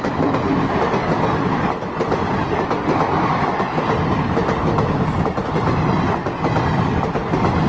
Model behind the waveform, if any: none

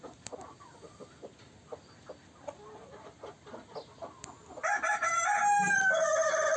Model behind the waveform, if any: none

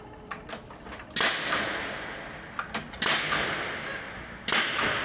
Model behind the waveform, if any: none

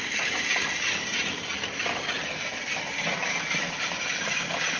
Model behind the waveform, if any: none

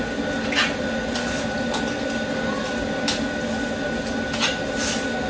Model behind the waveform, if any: none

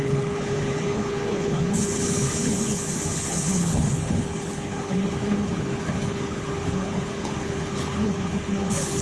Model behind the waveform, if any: codec, HILCodec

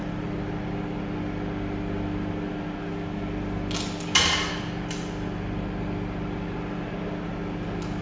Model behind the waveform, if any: none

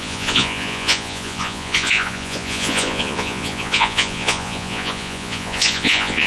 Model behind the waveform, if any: vocoder, Vocos